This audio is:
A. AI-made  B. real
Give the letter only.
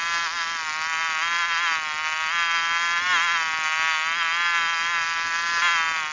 B